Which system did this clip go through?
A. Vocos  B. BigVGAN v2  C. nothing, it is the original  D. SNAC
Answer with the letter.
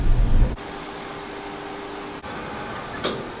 C